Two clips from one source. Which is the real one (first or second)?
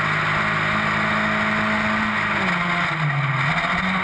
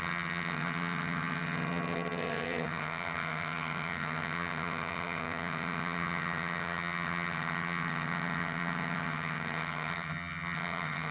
first